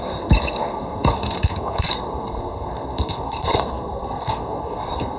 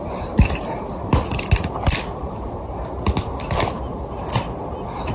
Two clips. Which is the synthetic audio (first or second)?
first